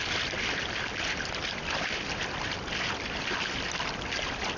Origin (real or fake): real